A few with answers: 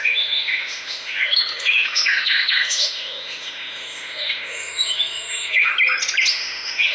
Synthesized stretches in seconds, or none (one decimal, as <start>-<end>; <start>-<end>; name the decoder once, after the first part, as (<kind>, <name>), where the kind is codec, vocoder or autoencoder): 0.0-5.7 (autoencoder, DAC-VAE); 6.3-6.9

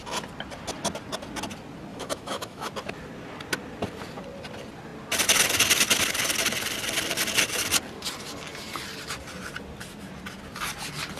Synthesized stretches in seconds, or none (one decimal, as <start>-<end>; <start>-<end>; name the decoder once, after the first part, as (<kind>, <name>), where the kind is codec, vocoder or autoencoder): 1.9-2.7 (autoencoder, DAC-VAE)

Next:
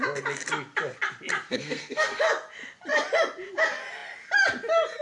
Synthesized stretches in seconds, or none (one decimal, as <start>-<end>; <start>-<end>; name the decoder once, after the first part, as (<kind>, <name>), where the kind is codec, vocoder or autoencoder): 1.5-2.2 (codec, SNAC)

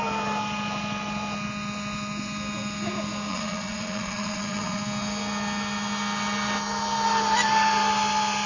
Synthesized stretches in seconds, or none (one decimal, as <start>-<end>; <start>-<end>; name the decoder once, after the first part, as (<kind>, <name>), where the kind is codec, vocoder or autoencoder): 3.3-4.8 (vocoder, Vocos)

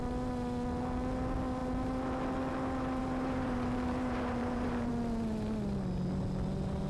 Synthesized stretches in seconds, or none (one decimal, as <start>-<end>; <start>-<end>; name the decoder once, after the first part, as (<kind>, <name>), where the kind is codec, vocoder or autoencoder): 3.0-4.9 (vocoder, BigVGAN v2)